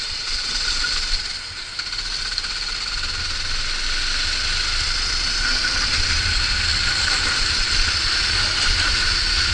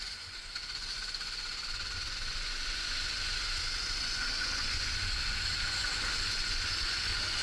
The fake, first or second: second